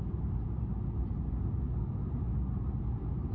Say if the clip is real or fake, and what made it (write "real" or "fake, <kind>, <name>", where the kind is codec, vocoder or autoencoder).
real